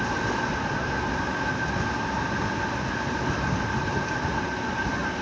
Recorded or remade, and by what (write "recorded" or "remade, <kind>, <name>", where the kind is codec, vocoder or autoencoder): recorded